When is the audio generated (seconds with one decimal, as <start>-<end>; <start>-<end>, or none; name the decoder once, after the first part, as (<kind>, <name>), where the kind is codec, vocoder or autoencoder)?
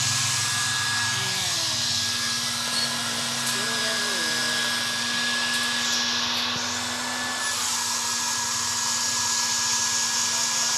none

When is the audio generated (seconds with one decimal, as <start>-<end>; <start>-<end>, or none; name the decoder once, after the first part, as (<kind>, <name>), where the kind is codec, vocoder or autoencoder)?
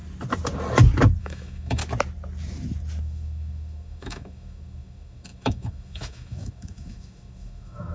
1.2-1.8 (autoencoder, DAC-VAE); 3.0-7.9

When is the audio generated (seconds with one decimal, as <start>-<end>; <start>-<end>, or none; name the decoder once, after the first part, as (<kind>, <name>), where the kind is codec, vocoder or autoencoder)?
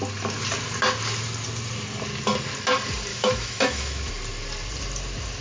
3.1-4.1 (autoencoder, DAC-VAE)